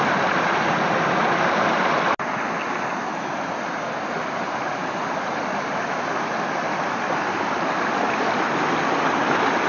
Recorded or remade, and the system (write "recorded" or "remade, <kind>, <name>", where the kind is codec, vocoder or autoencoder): recorded